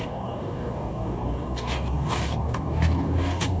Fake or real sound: fake